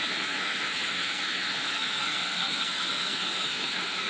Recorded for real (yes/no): no